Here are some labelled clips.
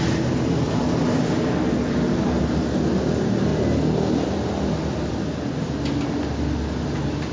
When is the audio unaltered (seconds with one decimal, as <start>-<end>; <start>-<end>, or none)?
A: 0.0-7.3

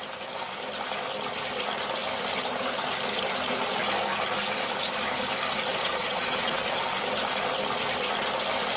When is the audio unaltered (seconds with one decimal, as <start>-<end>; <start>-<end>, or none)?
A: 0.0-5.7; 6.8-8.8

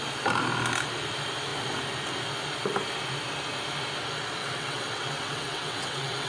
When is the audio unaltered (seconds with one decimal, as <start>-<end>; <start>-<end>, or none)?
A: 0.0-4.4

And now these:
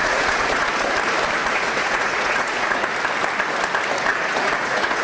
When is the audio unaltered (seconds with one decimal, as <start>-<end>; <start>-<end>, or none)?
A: 0.6-1.4; 2.9-4.1

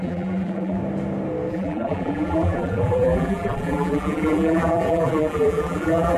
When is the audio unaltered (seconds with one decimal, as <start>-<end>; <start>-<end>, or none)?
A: 0.8-1.5